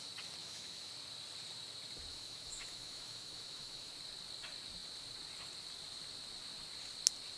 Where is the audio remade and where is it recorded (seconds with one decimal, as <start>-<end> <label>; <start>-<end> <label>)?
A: 0.0-0.4 recorded; 0.4-0.9 remade; 0.9-2.1 recorded; 2.1-3.9 remade; 3.9-7.4 recorded